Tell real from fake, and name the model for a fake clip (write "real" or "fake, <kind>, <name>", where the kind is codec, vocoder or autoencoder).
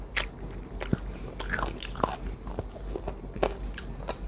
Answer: real